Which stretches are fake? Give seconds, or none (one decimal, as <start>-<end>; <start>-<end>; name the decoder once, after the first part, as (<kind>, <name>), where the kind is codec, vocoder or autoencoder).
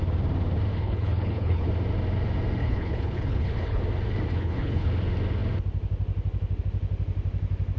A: 0.7-1.7 (codec, HILCodec); 2.6-3.8; 4.3-4.9